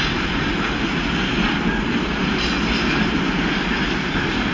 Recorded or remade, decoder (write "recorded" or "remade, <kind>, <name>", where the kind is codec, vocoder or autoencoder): recorded